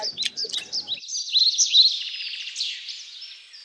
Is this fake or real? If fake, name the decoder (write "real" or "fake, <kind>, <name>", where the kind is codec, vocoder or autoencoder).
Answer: real